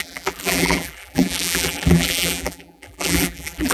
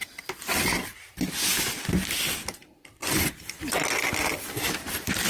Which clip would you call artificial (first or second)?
first